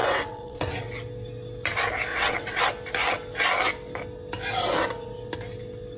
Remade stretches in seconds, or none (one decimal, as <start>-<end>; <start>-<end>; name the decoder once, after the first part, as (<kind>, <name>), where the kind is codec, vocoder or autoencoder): 0.0-0.7 (vocoder, WaveNeXt); 2.1-2.6